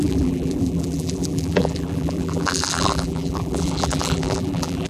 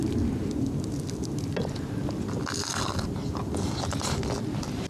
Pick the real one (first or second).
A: second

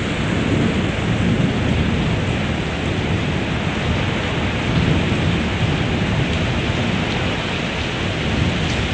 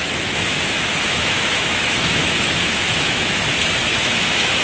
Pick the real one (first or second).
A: first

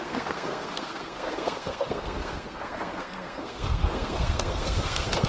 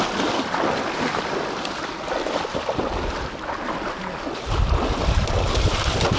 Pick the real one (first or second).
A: second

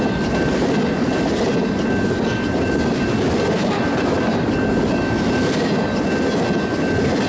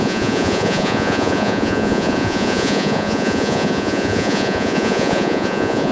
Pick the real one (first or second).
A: first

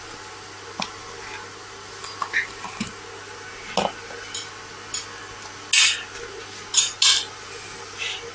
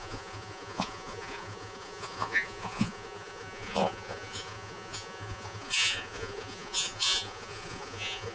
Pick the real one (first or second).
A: first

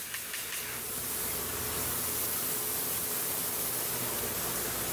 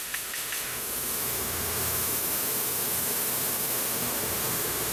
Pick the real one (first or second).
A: first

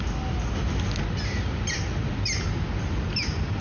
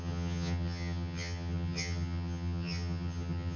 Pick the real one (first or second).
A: first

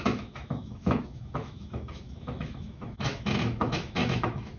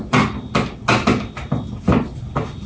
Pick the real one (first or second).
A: second